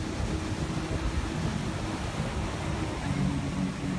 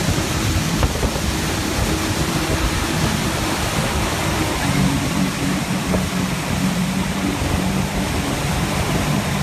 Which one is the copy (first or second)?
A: second